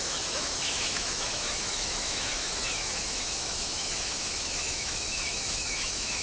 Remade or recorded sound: remade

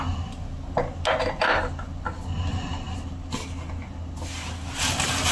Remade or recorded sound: recorded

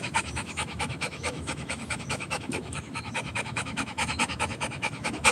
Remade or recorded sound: remade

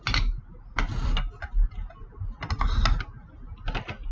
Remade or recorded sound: recorded